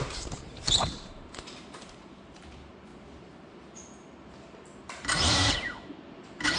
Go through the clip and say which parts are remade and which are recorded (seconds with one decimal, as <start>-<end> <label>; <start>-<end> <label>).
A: 0.0-2.9 remade; 2.9-4.8 recorded; 4.8-6.6 remade